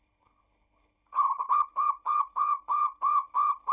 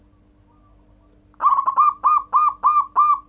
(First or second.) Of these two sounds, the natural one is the second